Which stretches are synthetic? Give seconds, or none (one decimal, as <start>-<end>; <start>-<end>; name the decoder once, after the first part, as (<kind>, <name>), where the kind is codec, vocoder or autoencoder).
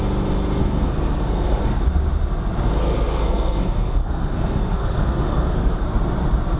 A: 0.6-1.8 (codec, SNAC); 2.9-5.8